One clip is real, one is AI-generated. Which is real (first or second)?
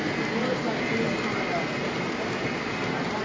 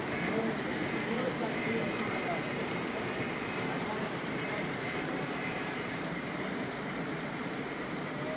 first